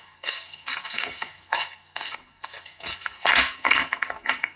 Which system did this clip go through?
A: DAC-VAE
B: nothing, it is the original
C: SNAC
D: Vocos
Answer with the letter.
C